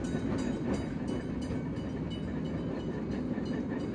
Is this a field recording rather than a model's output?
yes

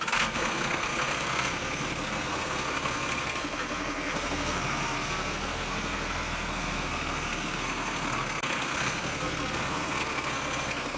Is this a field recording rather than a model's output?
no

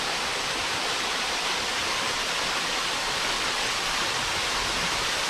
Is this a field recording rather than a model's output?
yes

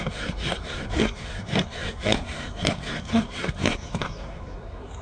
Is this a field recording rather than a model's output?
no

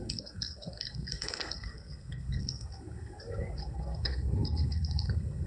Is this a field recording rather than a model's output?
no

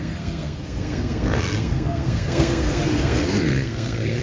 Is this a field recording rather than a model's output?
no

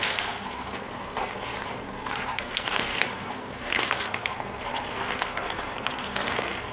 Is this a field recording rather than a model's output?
no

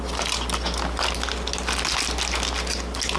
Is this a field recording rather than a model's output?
yes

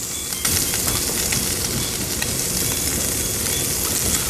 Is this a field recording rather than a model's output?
yes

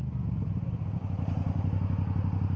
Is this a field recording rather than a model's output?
yes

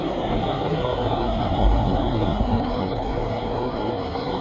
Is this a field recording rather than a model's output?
no